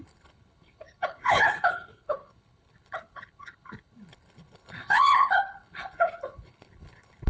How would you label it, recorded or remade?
remade